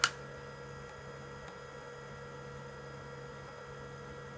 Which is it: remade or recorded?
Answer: recorded